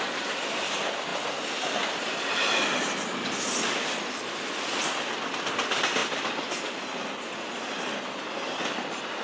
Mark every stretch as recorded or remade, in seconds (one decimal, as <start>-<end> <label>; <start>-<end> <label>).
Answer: 0.0-9.2 recorded